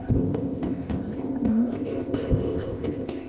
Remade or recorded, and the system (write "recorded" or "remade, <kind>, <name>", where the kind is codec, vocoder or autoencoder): remade, codec, ZipCodec